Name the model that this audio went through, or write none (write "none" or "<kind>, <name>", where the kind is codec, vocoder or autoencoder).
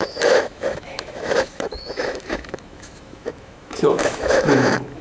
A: autoencoder, DAC-VAE